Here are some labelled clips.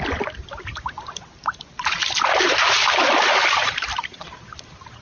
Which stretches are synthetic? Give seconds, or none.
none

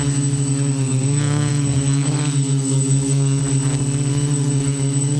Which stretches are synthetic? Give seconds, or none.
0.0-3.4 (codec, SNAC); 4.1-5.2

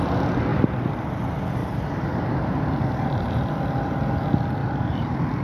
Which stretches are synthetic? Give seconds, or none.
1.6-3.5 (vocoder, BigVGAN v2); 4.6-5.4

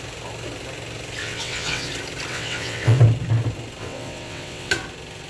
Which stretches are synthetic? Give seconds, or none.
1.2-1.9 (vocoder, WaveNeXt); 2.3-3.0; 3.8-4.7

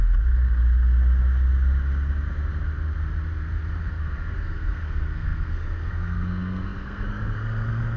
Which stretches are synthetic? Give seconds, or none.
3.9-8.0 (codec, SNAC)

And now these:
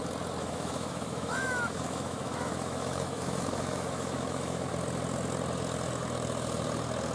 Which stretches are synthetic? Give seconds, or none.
0.4-4.7 (autoencoder, DAC-VAE)

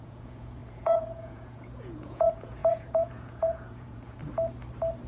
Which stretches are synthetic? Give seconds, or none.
0.0-4.2 (vocoder, Vocos)

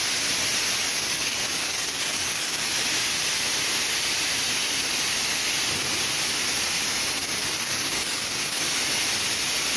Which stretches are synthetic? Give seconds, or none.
0.9-2.7 (codec, DAC); 7.2-8.6